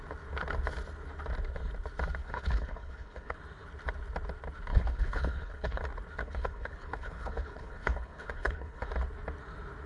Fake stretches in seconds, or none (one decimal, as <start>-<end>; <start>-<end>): 2.2-3.4; 4.7-5.8; 6.2-8.9